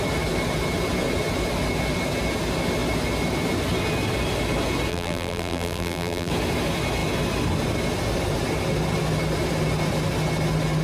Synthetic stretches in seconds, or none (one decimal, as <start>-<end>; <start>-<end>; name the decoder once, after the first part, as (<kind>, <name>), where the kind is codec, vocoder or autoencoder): 4.9-6.3 (vocoder, BigVGAN v2)